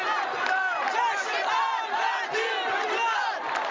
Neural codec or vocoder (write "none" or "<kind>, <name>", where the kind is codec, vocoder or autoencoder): vocoder, BigVGAN v2